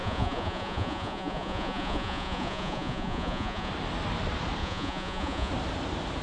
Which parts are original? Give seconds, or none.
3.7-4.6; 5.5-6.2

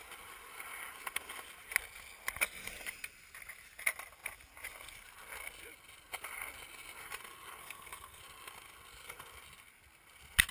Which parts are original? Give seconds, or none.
0.0-7.6; 8.2-10.5